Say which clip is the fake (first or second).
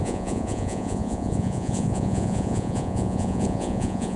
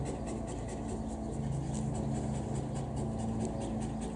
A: first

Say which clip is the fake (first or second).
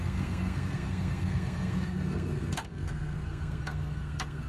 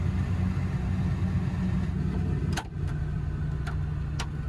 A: first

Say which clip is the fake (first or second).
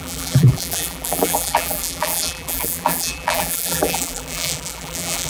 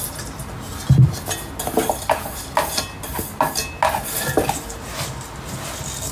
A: first